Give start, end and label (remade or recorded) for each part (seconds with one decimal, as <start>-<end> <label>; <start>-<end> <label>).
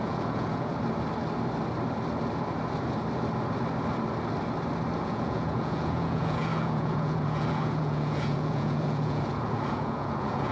0.0-0.7 remade; 0.7-5.0 recorded; 5.0-10.5 remade